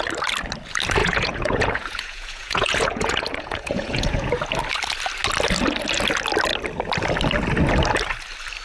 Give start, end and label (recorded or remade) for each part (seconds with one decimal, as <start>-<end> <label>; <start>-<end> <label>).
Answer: 0.0-1.0 recorded; 1.0-4.3 remade; 4.3-8.6 recorded